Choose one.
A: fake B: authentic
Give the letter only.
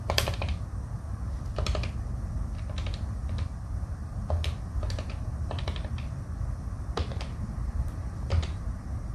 A